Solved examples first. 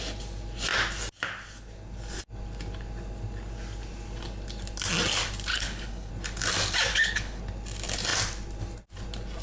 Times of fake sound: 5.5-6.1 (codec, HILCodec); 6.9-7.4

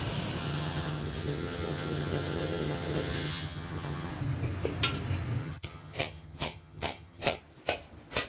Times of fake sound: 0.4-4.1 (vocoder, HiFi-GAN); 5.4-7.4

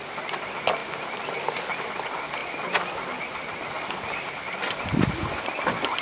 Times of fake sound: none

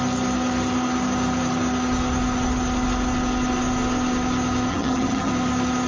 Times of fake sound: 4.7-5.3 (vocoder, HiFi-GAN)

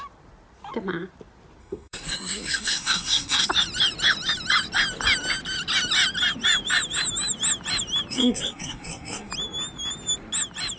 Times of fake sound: 1.6-3.5 (codec, SNAC); 8.1-9.3

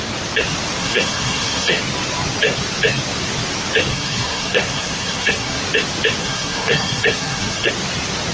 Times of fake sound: 0.8-1.8 (codec, SNAC); 3.9-5.6; 6.2-7.7

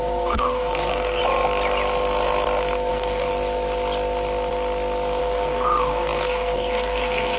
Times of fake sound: 0.0-1.2 (codec, SNAC); 2.9-3.3; 5.2-7.4

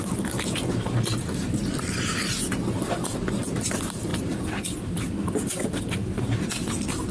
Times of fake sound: 0.0-7.1 (vocoder, BigVGAN v2)